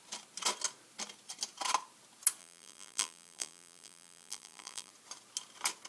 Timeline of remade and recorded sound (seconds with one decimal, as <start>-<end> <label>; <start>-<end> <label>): 0.0-2.4 recorded; 2.4-4.9 remade; 4.9-5.9 recorded